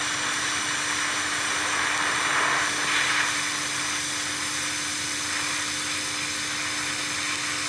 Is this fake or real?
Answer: real